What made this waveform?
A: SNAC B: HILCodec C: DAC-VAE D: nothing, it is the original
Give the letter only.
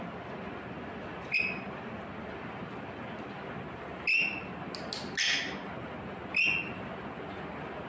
D